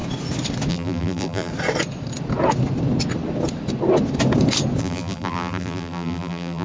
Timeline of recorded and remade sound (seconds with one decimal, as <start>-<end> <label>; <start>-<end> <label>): 0.0-0.7 recorded; 0.7-1.5 remade; 1.5-4.8 recorded; 4.8-6.6 remade